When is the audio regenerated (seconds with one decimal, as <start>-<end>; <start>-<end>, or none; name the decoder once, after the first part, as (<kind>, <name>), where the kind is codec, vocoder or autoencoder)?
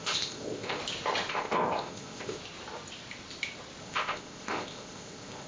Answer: 0.0-0.8 (codec, ZipCodec); 1.3-2.4; 3.8-5.5